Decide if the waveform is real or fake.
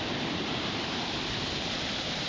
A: fake